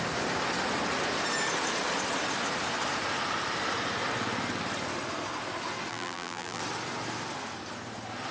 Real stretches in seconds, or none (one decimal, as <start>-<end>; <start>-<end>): 0.0-5.9; 6.6-8.3